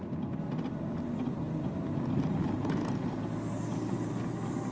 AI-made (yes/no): no